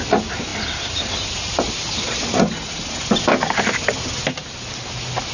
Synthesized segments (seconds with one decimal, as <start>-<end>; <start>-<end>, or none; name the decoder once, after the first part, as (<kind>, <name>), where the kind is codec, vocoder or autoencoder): none